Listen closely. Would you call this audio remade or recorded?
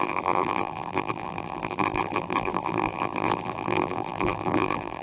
remade